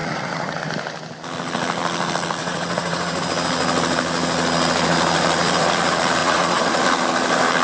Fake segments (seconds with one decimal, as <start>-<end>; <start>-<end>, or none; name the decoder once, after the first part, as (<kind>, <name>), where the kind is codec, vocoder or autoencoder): 0.0-0.6 (vocoder, Vocos); 2.4-3.2; 6.2-6.8